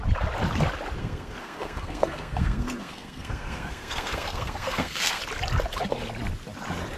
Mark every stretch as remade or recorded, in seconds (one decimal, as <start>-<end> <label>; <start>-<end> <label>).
0.0-1.0 recorded; 1.0-5.2 remade; 5.2-7.0 recorded